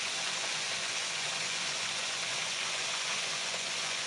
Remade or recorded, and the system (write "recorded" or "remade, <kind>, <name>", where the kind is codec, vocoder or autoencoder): remade, vocoder, Vocos